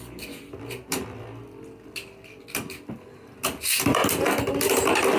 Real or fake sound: real